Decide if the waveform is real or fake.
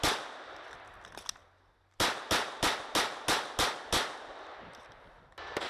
real